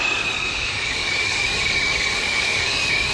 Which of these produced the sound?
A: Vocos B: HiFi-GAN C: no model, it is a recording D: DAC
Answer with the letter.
D